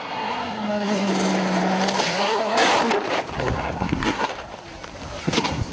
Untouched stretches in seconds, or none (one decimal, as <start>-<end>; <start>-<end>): 1.1-2.1; 2.7-3.4; 4.3-5.2